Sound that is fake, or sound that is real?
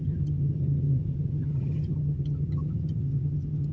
fake